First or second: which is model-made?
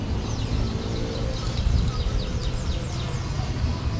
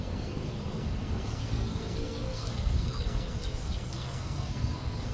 second